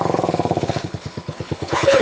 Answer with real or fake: fake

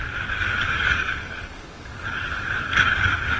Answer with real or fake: fake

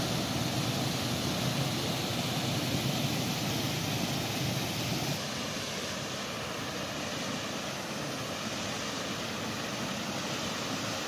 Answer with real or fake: real